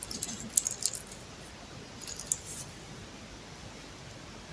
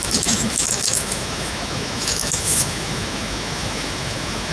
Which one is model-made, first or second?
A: second